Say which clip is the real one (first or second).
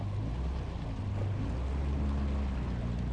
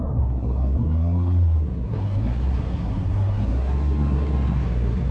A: first